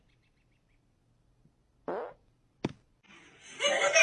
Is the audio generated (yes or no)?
no